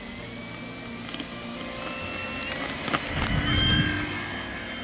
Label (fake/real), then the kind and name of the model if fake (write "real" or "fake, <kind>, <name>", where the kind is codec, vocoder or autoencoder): real